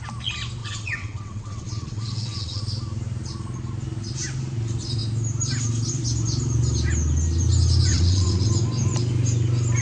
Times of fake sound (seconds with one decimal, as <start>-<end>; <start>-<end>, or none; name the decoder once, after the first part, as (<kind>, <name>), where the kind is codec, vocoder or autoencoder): 0.6-2.6 (vocoder, WaveNeXt); 7.9-8.5